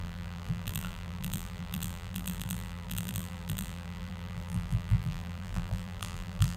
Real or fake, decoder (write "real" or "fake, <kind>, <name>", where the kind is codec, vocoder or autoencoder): fake, vocoder, BigVGAN v2